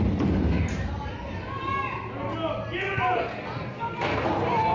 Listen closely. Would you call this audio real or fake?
real